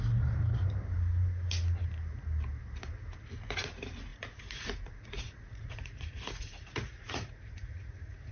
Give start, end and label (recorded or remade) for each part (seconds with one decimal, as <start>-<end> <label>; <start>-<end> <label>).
0.0-4.1 recorded; 4.1-8.3 remade